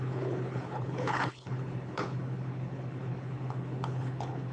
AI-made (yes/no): yes